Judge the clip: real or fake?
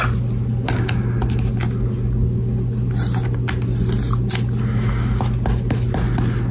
real